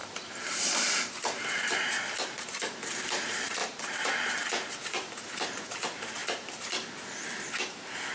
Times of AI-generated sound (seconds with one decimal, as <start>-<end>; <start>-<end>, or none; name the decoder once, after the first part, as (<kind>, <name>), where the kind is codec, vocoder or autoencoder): 0.0-6.2 (vocoder, BigVGAN v2); 7.4-8.1